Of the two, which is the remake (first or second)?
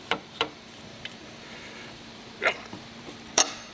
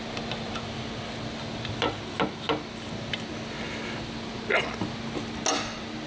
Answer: first